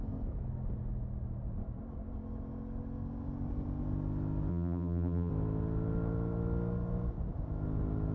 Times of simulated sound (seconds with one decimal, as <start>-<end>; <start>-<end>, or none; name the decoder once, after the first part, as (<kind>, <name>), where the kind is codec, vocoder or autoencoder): 4.5-5.3 (vocoder, BigVGAN v2)